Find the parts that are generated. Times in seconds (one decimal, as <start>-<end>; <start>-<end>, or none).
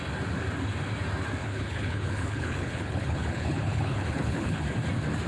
1.4-4.6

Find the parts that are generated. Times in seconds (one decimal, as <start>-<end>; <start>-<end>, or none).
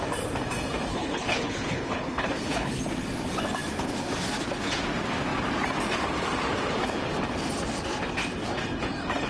0.9-2.8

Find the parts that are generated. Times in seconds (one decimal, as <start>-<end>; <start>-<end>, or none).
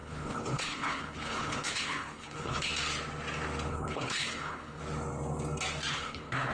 0.0-2.7; 3.7-4.8; 5.9-6.5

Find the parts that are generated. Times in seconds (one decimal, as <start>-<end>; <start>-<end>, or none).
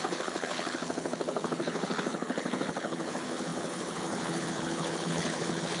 0.0-5.8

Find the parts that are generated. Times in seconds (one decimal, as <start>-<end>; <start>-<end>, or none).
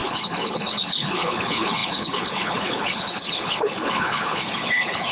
0.0-5.1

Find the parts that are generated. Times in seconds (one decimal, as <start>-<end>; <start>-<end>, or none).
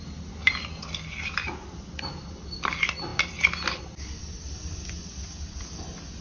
none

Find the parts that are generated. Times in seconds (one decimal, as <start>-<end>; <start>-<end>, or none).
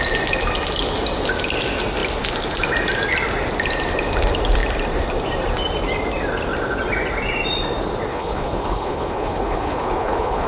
8.1-10.5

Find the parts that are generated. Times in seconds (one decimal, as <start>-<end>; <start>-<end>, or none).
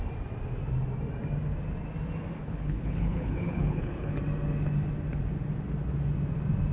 2.4-4.2